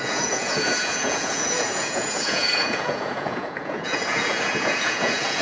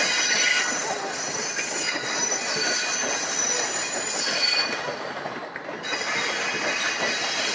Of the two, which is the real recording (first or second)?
second